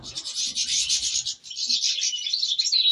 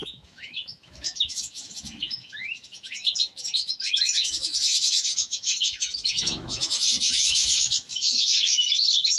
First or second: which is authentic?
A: first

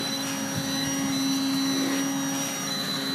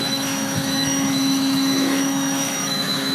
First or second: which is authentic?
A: first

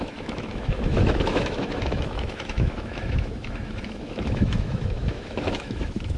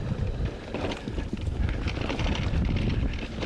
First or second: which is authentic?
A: second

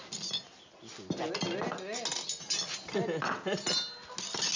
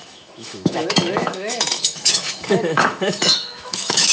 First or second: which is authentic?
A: first